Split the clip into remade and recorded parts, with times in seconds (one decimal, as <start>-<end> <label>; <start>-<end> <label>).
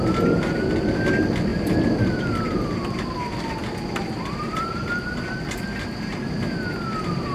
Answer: 0.0-1.5 recorded; 1.5-2.5 remade; 2.5-3.6 recorded; 3.6-5.9 remade; 5.9-7.3 recorded